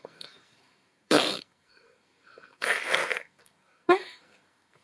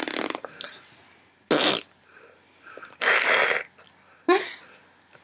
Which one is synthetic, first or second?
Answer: first